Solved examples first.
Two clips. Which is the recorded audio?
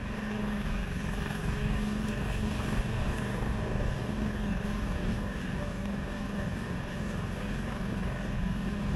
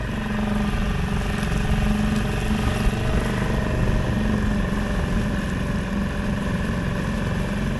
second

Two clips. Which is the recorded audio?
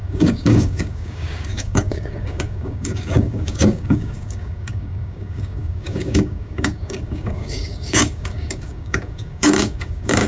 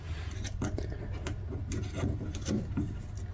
second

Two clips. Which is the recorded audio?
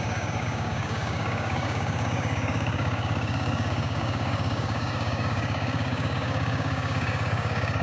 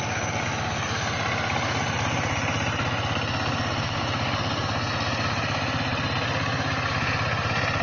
second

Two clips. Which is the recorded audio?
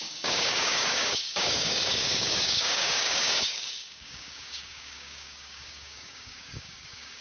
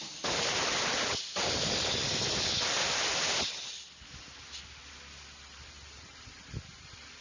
second